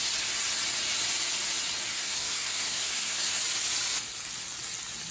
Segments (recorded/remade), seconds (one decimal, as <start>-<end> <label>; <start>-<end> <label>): 0.0-1.9 recorded; 1.9-3.4 remade; 3.4-5.1 recorded